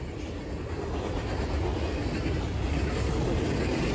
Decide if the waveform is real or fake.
real